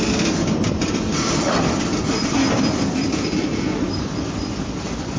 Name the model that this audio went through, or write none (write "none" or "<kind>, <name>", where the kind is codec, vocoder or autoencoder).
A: none